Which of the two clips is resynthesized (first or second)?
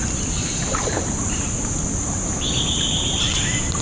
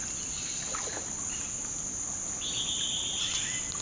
first